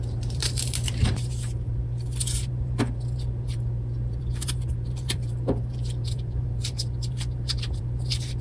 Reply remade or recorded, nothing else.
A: remade